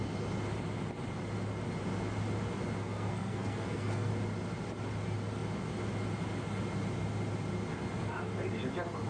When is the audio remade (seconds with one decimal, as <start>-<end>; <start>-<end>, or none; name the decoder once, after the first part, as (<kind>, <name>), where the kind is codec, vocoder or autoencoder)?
2.8-4.1 (codec, SNAC)